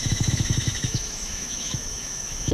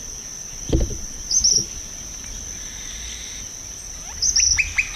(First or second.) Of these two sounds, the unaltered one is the second